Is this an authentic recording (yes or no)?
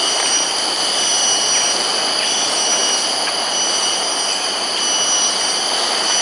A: yes